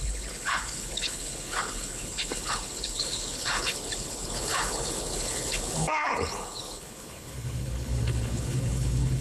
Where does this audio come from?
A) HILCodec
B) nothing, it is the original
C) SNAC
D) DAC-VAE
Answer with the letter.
A